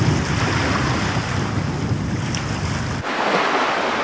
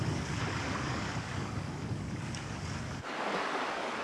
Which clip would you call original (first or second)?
first